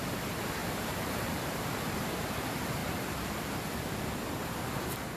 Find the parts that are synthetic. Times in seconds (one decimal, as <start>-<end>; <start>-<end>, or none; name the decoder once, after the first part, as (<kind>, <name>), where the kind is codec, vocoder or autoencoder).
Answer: 0.6-1.8 (vocoder, BigVGAN v2)